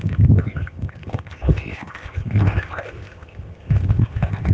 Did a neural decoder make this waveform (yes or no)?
yes